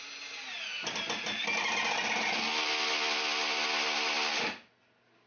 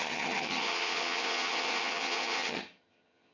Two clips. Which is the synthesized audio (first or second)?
second